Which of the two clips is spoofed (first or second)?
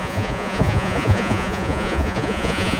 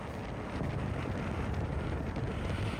first